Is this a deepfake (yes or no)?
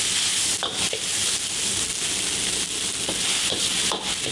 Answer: no